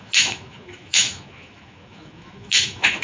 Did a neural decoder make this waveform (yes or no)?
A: yes